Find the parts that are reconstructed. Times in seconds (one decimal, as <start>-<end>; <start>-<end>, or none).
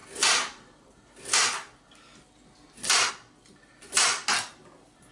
none